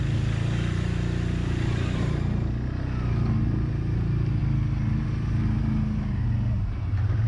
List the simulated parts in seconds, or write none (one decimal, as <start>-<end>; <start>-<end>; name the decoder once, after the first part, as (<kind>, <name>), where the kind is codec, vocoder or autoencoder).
none